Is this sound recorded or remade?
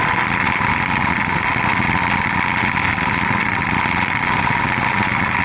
recorded